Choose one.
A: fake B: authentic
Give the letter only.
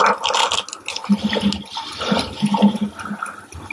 B